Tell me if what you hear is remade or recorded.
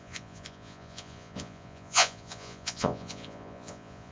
remade